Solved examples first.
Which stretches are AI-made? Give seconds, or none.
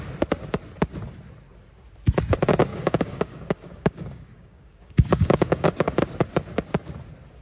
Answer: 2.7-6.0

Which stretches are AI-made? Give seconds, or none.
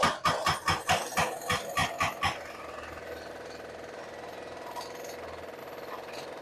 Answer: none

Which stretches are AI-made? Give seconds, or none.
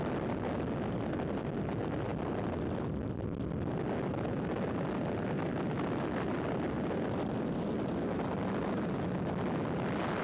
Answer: none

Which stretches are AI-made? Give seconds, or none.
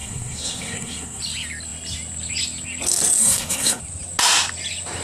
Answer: 0.0-1.2; 3.2-3.8